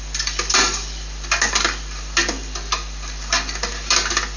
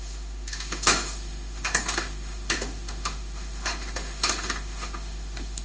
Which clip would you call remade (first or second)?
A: second